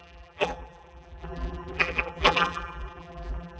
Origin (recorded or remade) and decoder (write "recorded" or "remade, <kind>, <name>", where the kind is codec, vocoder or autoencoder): remade, vocoder, BigVGAN v2